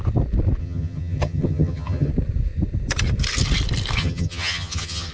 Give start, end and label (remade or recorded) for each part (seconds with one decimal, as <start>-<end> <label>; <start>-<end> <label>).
0.0-0.6 recorded; 0.6-2.1 remade; 2.1-4.0 recorded; 4.0-5.1 remade